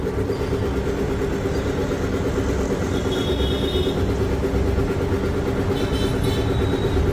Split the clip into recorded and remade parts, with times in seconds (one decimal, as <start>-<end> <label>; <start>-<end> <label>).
0.0-7.1 recorded